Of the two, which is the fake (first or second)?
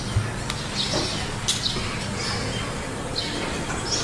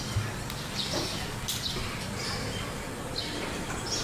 second